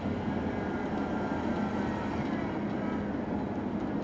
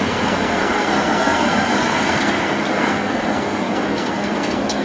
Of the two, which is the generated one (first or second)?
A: second